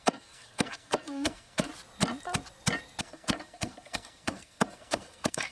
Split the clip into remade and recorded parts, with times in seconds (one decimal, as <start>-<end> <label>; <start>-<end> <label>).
0.0-1.7 remade; 1.7-3.0 recorded; 3.0-5.5 remade